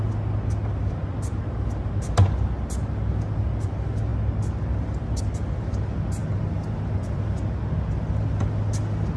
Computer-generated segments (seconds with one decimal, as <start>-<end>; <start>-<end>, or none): none